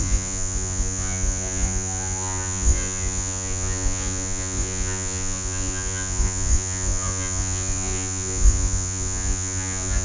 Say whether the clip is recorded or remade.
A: remade